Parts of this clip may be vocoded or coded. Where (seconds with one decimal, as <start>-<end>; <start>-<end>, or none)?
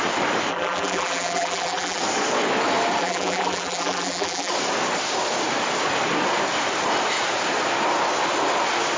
0.5-2.0; 3.0-4.5